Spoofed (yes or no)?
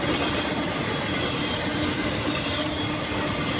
no